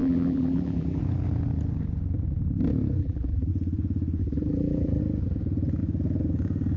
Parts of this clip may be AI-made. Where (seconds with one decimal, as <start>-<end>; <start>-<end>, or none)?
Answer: 0.0-1.0; 3.0-3.5; 4.2-5.0